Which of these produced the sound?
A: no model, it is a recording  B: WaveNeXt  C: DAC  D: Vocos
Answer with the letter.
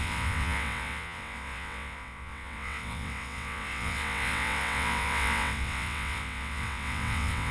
B